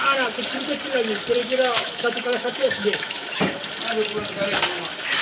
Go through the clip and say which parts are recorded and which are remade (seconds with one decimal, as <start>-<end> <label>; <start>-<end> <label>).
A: 0.0-1.4 recorded; 1.4-3.4 remade; 3.4-5.2 recorded